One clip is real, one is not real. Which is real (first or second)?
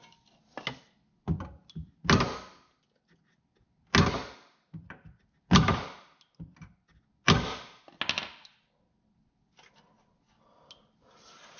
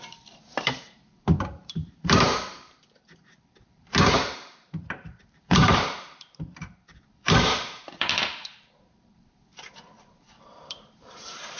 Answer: first